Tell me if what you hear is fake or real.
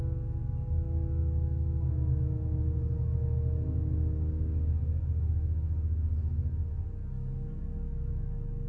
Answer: real